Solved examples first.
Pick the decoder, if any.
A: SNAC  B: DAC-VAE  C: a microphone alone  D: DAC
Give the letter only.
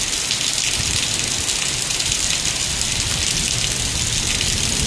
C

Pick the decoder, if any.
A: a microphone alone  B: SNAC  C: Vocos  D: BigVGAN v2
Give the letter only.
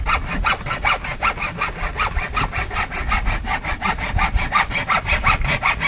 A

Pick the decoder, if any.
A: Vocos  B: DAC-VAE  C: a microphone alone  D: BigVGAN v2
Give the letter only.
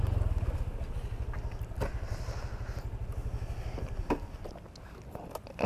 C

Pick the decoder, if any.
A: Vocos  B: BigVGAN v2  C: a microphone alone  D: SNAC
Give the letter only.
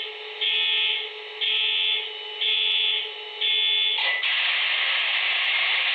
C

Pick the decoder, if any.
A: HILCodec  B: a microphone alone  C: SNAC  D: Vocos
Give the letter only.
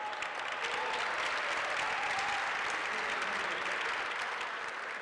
B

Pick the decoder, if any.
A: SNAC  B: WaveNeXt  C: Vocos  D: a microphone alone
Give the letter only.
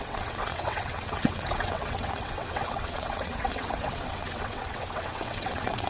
B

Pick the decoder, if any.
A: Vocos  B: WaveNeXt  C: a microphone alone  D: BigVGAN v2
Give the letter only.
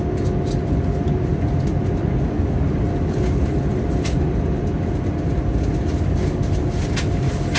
C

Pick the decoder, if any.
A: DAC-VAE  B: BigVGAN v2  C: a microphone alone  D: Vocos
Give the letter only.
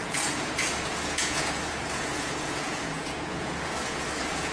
D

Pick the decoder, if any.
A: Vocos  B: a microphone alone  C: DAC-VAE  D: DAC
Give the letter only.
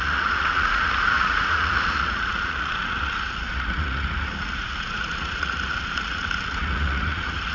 A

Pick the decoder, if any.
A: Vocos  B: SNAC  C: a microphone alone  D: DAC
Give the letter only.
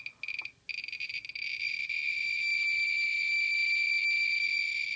C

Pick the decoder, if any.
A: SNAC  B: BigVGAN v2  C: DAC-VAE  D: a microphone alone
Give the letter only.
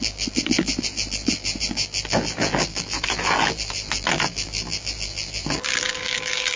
B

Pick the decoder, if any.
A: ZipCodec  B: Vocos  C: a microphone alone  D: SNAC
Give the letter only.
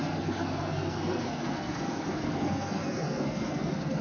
D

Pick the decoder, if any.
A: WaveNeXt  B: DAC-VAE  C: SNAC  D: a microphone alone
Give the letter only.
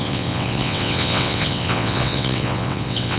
A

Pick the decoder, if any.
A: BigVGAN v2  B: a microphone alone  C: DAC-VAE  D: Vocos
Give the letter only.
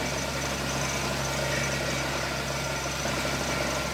B